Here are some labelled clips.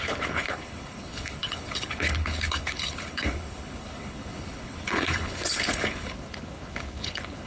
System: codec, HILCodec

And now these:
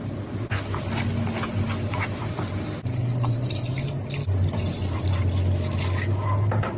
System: none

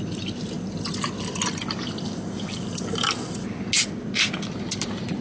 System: none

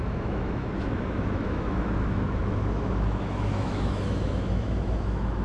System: autoencoder, DAC-VAE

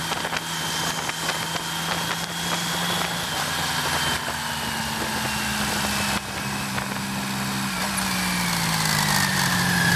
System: none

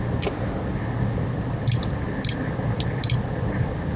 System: none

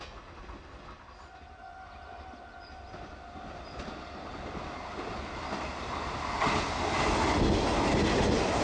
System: none